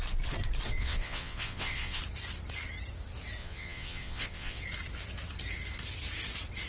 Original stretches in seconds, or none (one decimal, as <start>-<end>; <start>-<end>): 0.0-0.8; 2.0-3.4; 4.6-6.7